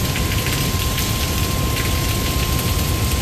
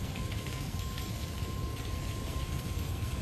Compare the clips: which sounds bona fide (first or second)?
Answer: first